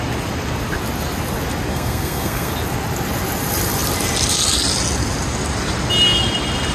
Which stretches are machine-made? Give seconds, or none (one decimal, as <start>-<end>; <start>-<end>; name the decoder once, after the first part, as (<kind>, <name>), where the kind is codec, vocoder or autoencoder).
1.7-2.5 (codec, SNAC)